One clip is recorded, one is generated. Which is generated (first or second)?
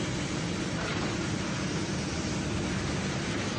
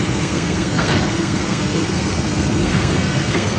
second